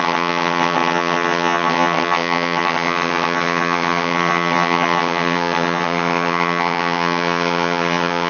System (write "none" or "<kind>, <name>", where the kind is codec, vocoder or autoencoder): vocoder, HiFi-GAN